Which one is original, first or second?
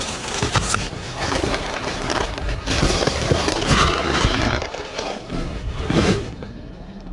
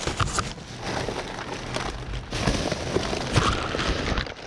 second